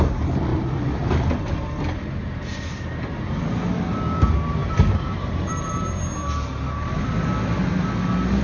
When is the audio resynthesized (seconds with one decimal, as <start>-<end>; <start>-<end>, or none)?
0.5-1.1; 2.2-2.8; 4.6-5.7